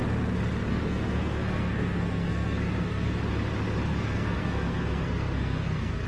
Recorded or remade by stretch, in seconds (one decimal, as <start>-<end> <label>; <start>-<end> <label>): 0.0-0.7 recorded; 0.7-3.2 remade; 3.2-3.9 recorded; 3.9-6.1 remade